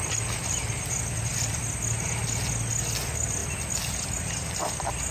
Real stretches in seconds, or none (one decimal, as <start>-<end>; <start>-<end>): 0.0-5.1